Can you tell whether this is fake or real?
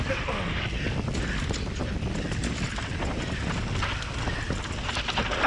real